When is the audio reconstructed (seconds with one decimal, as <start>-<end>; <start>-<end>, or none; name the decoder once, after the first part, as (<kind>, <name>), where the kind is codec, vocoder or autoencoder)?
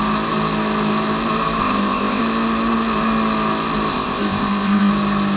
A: 1.6-2.2 (codec, ZipCodec); 3.9-4.9